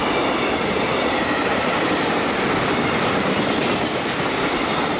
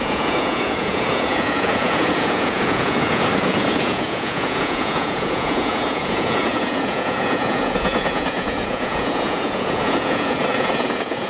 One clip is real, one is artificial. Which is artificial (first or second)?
second